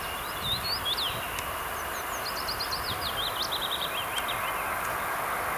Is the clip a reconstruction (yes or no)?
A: no